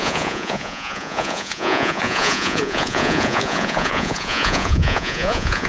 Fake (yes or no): yes